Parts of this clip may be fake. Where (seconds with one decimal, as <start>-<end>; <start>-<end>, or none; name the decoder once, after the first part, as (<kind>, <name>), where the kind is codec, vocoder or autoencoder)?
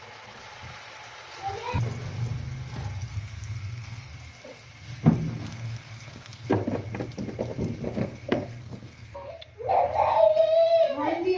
3.1-4.1 (codec, SNAC); 5.4-6.5; 8.0-9.3